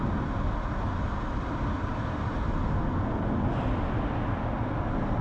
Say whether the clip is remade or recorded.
recorded